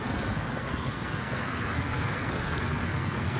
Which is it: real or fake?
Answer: fake